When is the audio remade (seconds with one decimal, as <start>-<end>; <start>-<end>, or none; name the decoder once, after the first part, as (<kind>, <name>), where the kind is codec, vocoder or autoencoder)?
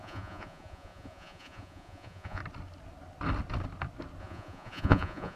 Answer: 0.0-2.4 (vocoder, Vocos); 4.2-5.4